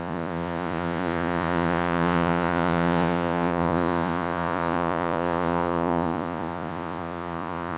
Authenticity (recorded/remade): remade